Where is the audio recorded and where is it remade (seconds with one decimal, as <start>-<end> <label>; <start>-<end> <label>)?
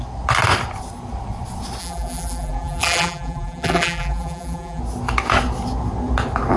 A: 0.0-1.8 recorded; 1.8-4.8 remade; 4.8-6.6 recorded